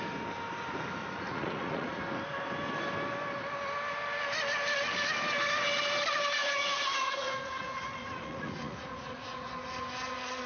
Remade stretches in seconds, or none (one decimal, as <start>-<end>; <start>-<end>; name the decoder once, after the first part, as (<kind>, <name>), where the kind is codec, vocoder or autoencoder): 1.0-2.0 (vocoder, Vocos); 6.4-9.5